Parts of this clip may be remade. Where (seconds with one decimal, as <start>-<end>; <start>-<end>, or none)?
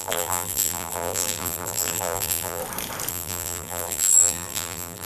0.0-2.6; 3.1-5.0